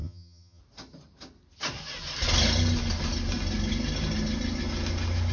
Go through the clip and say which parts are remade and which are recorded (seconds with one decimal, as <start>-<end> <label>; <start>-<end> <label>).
0.0-0.6 remade; 0.6-5.3 recorded